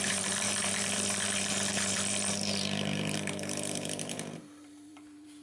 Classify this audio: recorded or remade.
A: remade